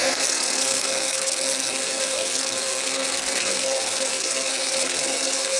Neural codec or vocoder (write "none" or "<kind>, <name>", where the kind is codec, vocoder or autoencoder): codec, SNAC